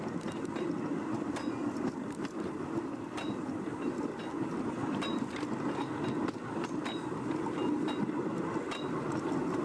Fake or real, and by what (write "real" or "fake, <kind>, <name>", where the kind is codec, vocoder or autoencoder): real